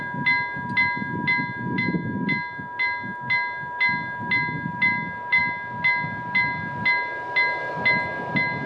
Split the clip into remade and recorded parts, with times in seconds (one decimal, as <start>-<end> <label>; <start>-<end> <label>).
0.0-8.7 recorded